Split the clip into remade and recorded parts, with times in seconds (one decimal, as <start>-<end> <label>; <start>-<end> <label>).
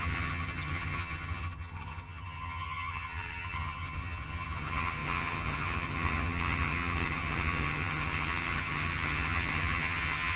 0.0-10.4 remade